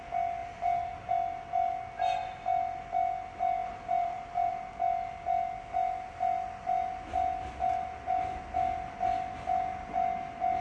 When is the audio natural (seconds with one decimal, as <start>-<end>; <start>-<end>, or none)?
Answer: 0.0-0.4; 1.1-3.6; 4.5-10.6